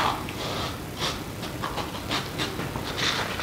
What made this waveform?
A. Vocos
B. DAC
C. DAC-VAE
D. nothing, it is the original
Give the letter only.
D